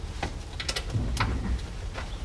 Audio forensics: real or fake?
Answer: real